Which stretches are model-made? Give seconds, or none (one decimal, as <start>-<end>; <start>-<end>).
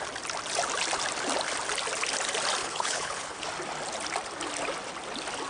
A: 2.6-3.4